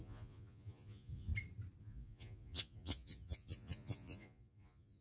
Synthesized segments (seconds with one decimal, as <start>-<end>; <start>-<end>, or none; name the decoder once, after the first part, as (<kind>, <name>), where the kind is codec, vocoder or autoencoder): 0.0-1.3 (vocoder, Vocos); 1.8-5.0